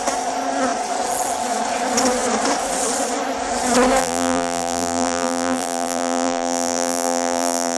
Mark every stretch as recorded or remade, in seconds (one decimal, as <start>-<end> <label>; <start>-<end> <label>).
0.0-4.0 recorded; 4.0-7.8 remade